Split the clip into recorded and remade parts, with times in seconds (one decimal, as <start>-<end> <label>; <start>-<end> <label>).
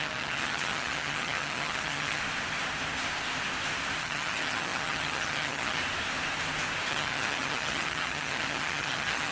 0.0-2.2 remade; 2.2-4.0 recorded; 4.0-5.8 remade; 5.8-6.9 recorded; 6.9-9.3 remade